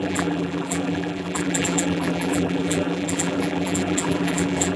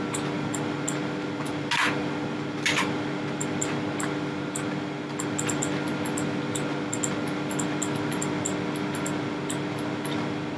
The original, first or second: second